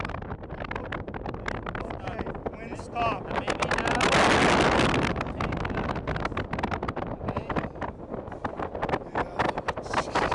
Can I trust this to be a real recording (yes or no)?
yes